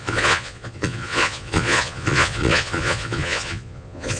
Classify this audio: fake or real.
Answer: fake